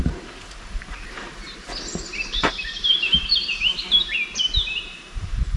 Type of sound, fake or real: fake